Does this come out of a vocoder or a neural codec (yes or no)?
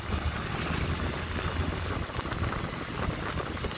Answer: no